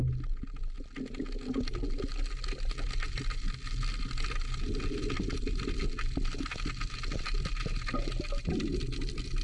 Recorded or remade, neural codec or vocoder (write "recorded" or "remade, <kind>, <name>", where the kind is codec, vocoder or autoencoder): recorded